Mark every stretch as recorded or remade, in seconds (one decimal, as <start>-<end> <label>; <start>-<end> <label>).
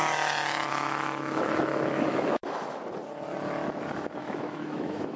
0.0-0.7 recorded; 0.7-2.8 remade; 2.8-4.2 recorded; 4.2-5.2 remade